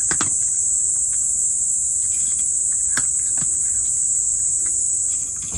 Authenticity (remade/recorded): recorded